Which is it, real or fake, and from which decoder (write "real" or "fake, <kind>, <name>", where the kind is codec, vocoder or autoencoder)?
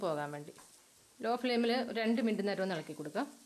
real